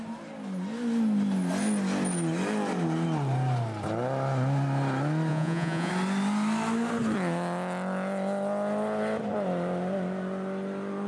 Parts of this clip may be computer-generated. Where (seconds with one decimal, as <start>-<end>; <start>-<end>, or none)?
5.3-5.9